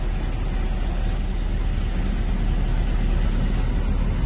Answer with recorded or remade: recorded